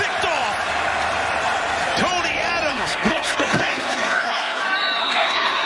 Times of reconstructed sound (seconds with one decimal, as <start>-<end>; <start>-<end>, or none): 2.7-4.6; 5.0-5.7